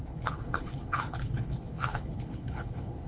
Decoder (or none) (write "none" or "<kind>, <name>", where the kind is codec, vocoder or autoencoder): codec, HILCodec